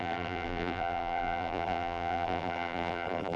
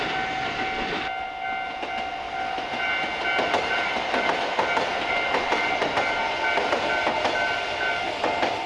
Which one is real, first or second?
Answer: second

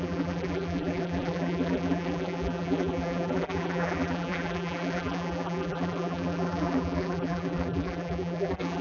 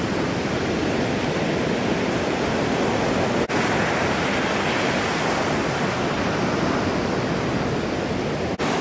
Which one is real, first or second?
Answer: second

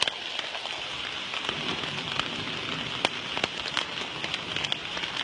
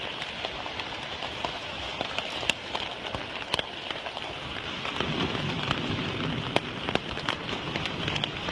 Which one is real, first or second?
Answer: first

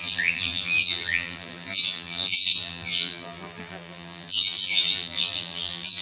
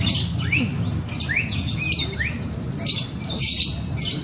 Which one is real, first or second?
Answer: second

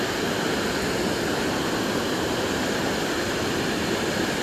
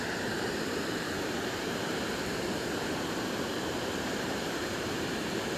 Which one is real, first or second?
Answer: first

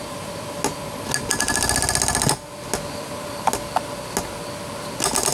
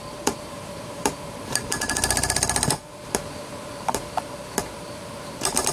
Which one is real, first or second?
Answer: first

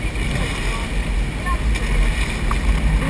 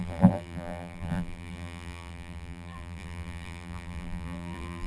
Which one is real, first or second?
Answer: first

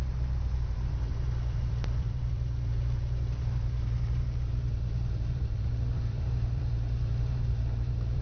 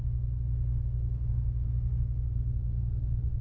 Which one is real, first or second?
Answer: second